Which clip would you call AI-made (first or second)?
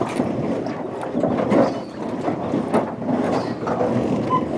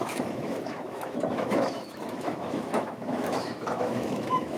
second